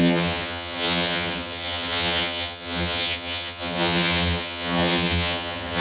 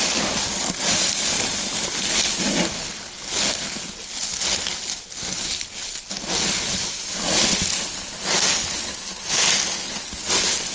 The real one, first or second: second